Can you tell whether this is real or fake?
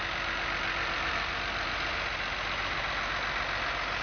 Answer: real